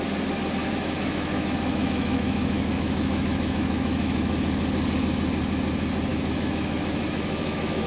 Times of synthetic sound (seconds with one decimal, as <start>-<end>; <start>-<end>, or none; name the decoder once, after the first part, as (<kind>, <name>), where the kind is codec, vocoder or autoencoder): 0.6-4.3 (autoencoder, DAC-VAE); 6.1-7.9